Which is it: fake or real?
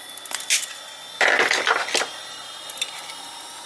real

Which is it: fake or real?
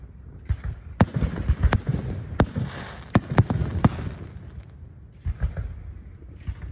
real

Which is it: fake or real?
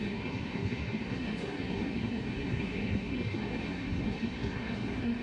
fake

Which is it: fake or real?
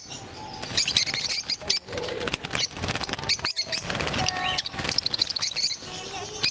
real